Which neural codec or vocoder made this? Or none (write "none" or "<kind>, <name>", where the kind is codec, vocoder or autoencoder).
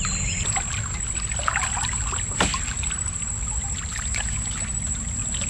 none